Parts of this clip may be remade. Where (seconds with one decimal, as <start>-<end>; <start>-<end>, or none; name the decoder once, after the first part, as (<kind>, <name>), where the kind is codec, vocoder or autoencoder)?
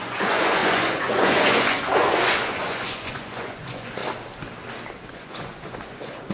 0.0-4.0 (vocoder, Vocos); 5.1-6.3